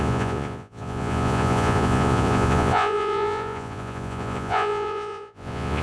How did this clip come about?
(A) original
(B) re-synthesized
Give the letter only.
B